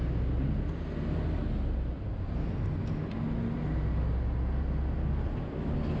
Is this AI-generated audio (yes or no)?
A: no